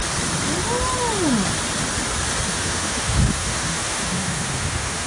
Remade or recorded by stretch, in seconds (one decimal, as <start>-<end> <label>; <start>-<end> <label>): 0.0-2.5 recorded; 2.5-5.1 remade